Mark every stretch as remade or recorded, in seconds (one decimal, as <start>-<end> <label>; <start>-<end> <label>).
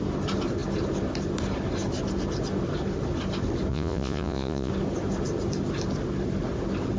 0.0-3.7 recorded; 3.7-4.7 remade; 4.7-7.0 recorded